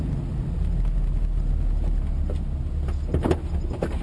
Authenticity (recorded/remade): recorded